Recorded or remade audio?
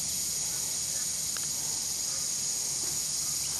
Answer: recorded